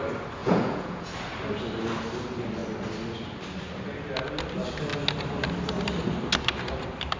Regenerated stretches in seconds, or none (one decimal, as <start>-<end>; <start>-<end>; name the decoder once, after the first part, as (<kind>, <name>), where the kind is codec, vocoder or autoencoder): 0.4-1.1 (vocoder, Vocos)